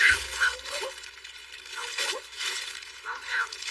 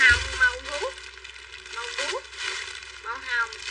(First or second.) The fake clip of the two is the first